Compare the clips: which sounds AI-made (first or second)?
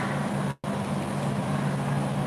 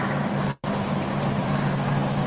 second